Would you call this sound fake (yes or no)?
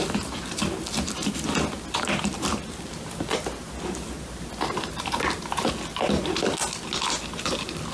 no